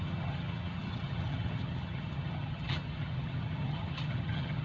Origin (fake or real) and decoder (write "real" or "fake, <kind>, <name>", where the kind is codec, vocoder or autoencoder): fake, vocoder, HiFi-GAN